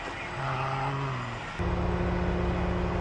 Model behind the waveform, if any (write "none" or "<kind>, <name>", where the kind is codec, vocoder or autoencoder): none